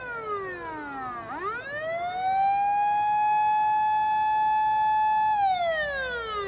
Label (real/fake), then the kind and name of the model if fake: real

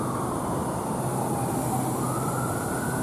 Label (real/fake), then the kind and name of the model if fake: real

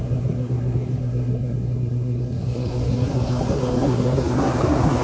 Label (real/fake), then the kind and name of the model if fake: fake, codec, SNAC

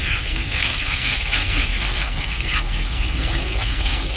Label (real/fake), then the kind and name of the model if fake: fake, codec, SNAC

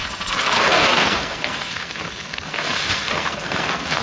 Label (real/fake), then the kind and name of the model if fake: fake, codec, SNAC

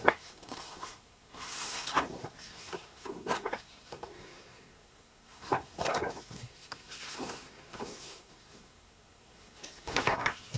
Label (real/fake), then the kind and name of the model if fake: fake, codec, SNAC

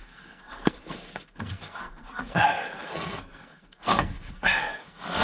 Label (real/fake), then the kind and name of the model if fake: fake, codec, SNAC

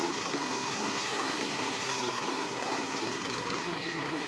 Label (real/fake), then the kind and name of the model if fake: fake, codec, SNAC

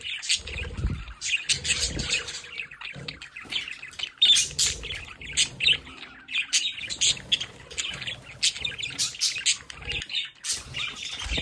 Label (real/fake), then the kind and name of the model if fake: real